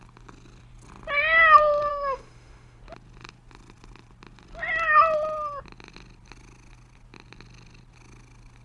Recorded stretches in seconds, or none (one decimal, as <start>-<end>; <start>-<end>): 0.0-1.9; 2.8-8.6